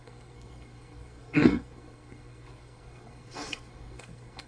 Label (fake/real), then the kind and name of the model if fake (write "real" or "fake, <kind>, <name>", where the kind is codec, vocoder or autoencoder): fake, codec, SNAC